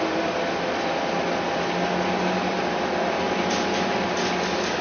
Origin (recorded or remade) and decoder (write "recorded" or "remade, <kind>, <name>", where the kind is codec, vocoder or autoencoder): recorded